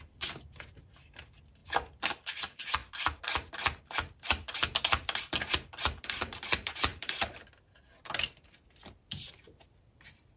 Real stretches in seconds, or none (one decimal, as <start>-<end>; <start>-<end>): 1.6-2.1; 2.8-5.2